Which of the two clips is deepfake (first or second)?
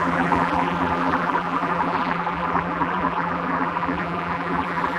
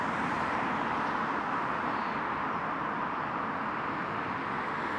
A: first